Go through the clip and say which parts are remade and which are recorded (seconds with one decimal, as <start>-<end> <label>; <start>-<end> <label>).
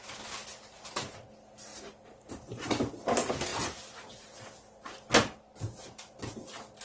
0.0-6.8 recorded